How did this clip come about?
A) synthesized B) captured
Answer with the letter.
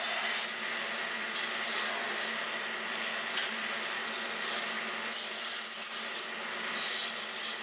B